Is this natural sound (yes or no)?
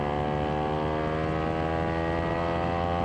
yes